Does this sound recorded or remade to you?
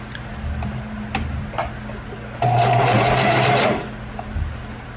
recorded